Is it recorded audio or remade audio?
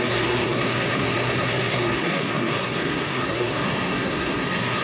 remade